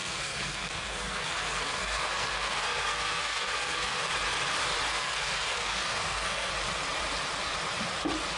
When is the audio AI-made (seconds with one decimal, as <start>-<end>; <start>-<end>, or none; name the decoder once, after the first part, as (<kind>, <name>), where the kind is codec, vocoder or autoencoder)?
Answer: 0.0-4.1 (codec, SNAC); 4.9-6.5